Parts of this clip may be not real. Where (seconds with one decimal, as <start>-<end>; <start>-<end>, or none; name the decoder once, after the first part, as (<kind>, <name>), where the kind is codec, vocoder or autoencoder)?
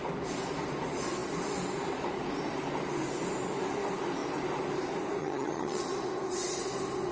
5.2-5.8 (vocoder, HiFi-GAN)